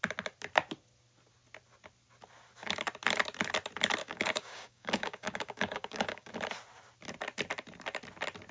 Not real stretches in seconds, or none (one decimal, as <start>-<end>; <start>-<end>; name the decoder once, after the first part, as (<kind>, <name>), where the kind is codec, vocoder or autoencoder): 4.0-6.3 (codec, DAC)